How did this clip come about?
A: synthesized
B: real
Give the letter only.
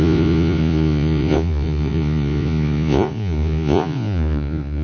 A